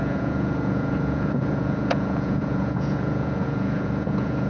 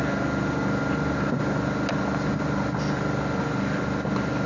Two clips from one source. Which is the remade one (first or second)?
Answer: first